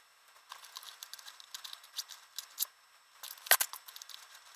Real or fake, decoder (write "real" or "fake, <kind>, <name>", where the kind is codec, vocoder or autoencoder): real